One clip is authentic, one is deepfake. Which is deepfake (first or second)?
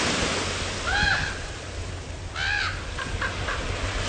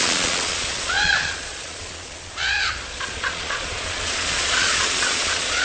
second